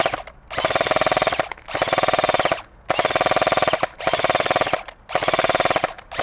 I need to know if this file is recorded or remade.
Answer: recorded